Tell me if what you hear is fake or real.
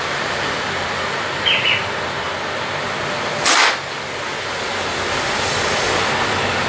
real